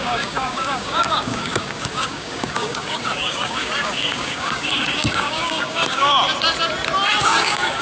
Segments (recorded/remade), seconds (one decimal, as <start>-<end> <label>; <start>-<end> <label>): 0.0-6.1 remade; 6.1-7.2 recorded; 7.2-7.8 remade